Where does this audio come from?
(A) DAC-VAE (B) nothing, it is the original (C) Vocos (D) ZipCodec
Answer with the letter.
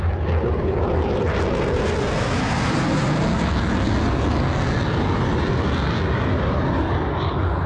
B